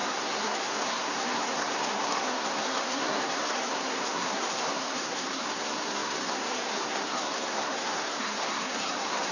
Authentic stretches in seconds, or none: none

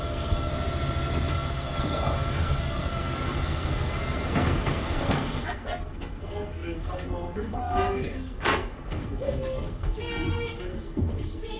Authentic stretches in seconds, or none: 0.5-1.3

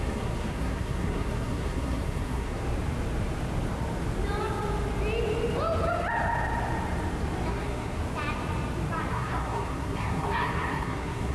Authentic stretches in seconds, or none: 2.6-7.5; 8.0-9.1

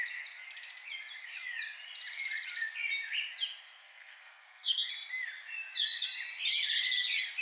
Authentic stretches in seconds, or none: 0.0-3.8; 4.9-7.4

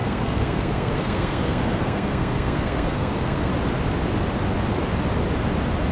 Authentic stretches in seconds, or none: 3.5-5.9

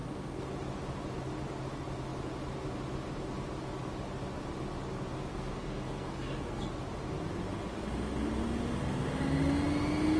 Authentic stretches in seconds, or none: 0.5-5.3; 6.7-10.2

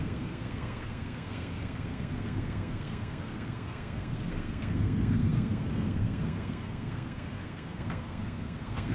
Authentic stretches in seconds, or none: none